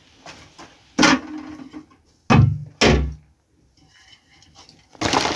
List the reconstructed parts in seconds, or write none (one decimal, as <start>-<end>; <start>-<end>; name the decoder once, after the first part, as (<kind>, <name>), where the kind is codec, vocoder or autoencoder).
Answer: none